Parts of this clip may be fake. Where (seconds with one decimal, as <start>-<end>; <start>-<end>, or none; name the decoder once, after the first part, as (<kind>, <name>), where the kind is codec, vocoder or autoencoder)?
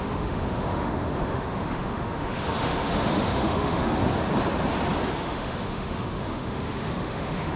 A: 0.0-4.0 (autoencoder, DAC-VAE); 5.2-7.6